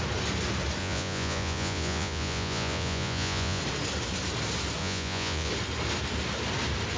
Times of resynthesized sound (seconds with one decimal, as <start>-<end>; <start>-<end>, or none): 0.8-3.6; 4.8-5.5